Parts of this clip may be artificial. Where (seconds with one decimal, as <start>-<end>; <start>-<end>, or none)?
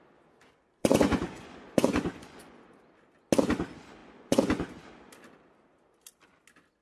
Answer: 0.8-2.6; 4.0-4.8